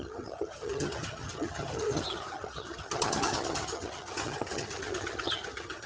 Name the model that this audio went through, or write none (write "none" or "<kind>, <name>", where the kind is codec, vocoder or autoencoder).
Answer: vocoder, HiFi-GAN